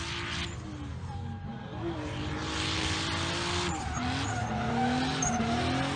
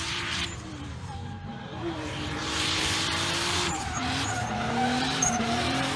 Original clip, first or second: first